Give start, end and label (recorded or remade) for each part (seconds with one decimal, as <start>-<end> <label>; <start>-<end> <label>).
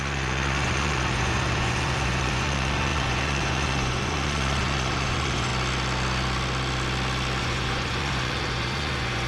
0.0-5.5 remade; 5.5-7.4 recorded; 7.4-9.3 remade